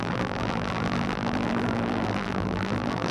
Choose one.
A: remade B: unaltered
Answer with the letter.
A